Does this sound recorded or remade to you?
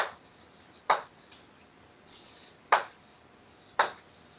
recorded